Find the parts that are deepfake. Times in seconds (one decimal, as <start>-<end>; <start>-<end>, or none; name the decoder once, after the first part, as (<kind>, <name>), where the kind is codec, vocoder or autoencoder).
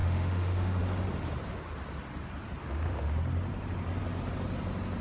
0.0-0.8 (autoencoder, DAC-VAE); 2.6-3.1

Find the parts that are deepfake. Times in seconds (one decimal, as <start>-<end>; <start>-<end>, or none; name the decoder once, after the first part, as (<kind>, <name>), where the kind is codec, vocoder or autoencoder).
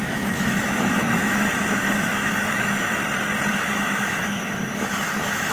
0.0-3.0 (autoencoder, DAC-VAE); 3.5-5.5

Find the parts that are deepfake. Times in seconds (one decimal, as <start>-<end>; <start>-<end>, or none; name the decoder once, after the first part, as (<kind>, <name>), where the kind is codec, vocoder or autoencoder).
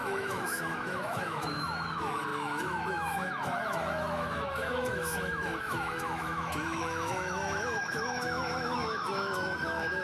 0.0-10.0 (autoencoder, DAC-VAE)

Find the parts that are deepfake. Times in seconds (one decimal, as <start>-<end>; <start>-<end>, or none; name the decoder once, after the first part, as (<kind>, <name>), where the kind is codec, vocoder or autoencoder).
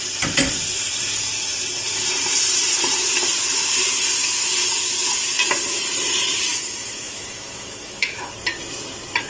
6.5-8.3 (autoencoder, DAC-VAE)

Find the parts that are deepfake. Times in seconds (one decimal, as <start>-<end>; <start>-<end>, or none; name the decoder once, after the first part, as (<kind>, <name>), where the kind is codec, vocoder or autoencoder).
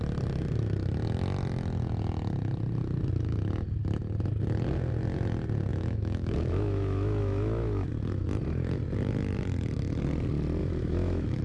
5.7-7.9 (autoencoder, DAC-VAE); 10.6-11.4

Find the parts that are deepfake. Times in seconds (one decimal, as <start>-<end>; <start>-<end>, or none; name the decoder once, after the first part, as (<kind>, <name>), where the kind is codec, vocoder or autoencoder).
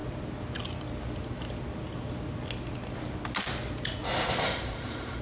4.4-5.2 (autoencoder, DAC-VAE)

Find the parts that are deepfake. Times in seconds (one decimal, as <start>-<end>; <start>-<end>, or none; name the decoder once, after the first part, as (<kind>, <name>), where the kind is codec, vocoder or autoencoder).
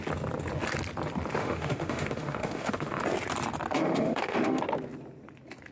1.4-3.0 (autoencoder, DAC-VAE); 3.8-4.6